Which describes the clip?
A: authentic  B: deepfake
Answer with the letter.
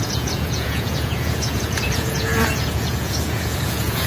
B